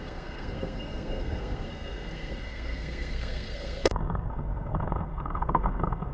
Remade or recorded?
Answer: remade